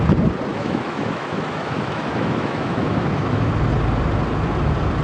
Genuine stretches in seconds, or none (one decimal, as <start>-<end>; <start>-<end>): 0.0-0.5; 3.5-5.0

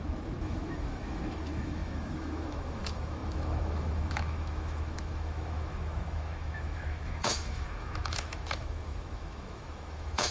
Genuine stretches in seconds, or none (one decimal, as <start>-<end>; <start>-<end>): none

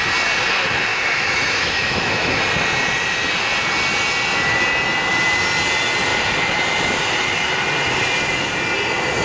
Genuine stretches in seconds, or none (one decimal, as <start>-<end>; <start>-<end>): 0.0-0.9; 2.4-9.2

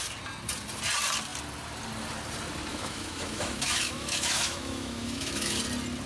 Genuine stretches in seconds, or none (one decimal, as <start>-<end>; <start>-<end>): 0.0-2.7; 5.6-6.1

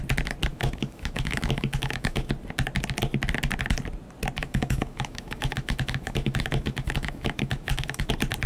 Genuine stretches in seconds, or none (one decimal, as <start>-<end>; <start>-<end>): 0.0-0.5; 2.3-4.4; 8.1-8.5

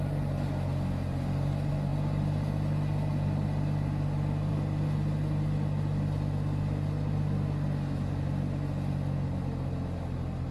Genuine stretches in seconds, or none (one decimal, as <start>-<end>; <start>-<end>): 0.0-10.5

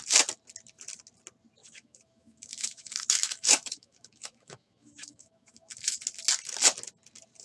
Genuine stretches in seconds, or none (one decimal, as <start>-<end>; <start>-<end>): 0.0-1.6; 6.0-7.4

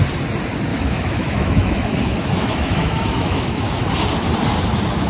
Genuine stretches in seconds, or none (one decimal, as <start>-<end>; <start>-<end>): 0.0-0.7; 3.8-5.1